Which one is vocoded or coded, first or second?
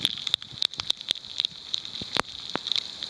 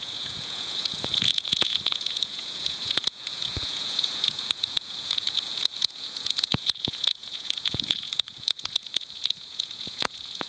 second